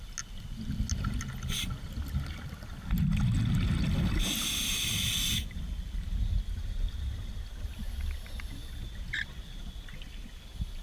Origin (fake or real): real